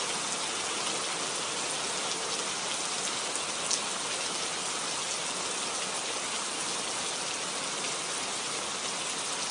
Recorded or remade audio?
recorded